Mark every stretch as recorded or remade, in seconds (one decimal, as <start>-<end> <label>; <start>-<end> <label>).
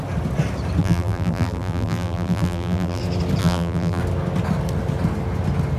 0.0-0.8 recorded; 0.8-3.0 remade; 3.0-3.4 recorded; 3.4-4.0 remade; 4.0-5.8 recorded